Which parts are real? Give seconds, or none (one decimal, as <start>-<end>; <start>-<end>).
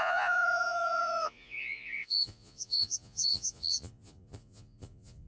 none